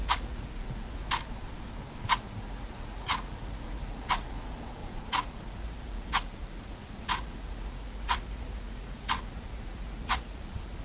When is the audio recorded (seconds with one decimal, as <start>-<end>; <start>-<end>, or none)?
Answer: 1.0-2.0